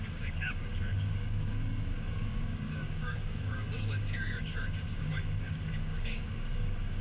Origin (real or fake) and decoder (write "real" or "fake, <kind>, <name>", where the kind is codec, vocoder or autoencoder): fake, codec, DAC